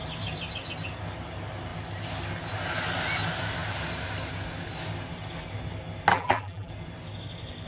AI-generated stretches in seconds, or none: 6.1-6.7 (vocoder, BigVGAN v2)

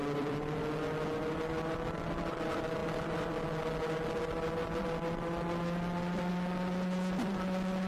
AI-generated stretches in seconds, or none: 0.0-0.6 (vocoder, BigVGAN v2)

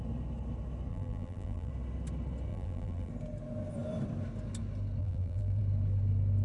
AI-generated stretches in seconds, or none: 0.9-1.7 (vocoder, BigVGAN v2); 2.5-3.1; 5.0-5.6

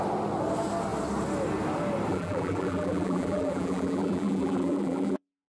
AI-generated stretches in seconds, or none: 2.1-5.5 (vocoder, BigVGAN v2)

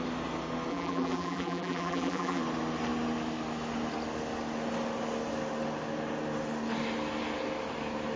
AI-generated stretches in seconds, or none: 0.7-2.4 (vocoder, BigVGAN v2)

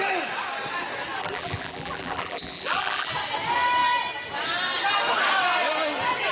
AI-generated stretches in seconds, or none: 1.2-3.1 (vocoder, BigVGAN v2)

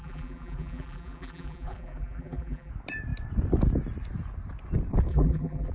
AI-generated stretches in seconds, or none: 0.0-2.7 (vocoder, BigVGAN v2); 5.1-5.7

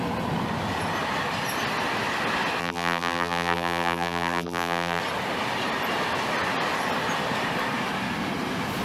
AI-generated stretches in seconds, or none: 2.6-5.0 (vocoder, BigVGAN v2)